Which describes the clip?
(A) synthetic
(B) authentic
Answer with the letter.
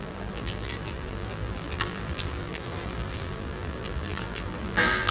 A